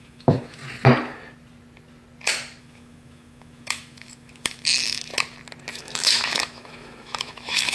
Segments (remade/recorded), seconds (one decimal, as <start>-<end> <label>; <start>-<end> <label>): 0.0-0.6 remade; 0.6-2.6 recorded; 2.6-5.1 remade; 5.1-5.7 recorded; 5.7-7.7 remade